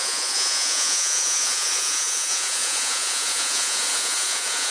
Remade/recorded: remade